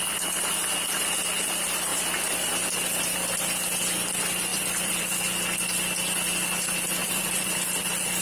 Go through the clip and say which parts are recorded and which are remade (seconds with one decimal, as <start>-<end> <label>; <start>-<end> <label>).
0.0-4.5 recorded; 4.5-5.0 remade; 5.0-7.0 recorded; 7.0-8.2 remade